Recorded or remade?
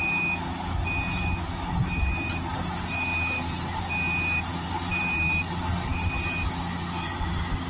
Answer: recorded